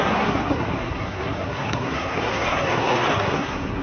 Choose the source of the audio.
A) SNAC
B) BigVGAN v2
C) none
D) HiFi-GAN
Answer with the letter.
A